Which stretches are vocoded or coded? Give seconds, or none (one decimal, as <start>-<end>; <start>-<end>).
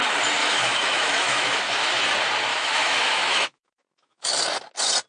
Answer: 0.4-2.0; 2.5-4.4